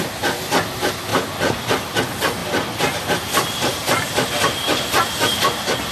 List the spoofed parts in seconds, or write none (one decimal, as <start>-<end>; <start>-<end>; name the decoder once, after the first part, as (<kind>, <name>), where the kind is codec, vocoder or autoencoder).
none